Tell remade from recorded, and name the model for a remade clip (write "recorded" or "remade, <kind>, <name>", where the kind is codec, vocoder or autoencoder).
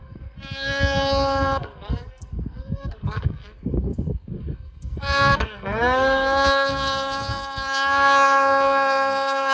remade, codec, SNAC